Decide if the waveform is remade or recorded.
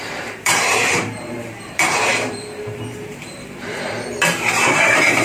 remade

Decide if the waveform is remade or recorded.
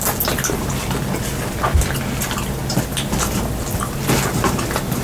recorded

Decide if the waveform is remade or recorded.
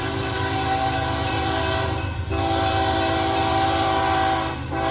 remade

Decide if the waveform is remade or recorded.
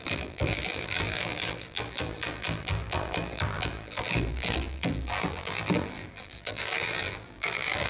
remade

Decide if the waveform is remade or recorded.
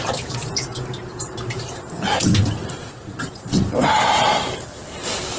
remade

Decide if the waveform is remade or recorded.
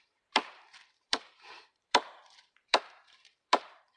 remade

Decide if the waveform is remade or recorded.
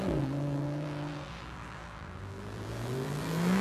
remade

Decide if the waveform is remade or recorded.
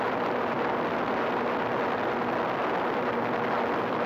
remade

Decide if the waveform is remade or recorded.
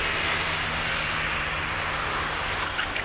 recorded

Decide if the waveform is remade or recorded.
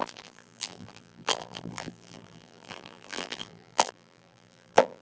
remade